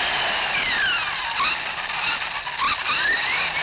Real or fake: real